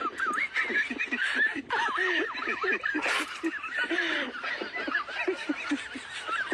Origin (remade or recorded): recorded